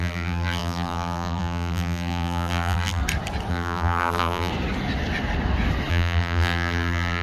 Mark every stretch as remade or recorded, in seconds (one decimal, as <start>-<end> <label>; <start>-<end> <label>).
0.0-3.0 remade; 3.0-3.5 recorded; 3.5-4.5 remade; 4.5-5.9 recorded; 5.9-7.2 remade